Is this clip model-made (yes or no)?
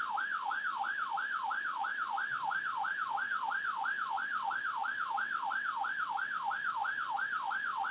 yes